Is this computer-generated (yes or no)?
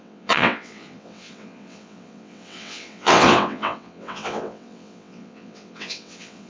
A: yes